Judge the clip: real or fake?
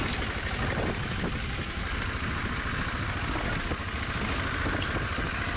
real